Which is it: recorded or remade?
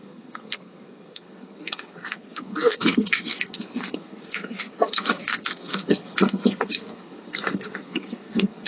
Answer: remade